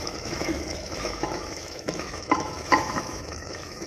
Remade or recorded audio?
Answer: remade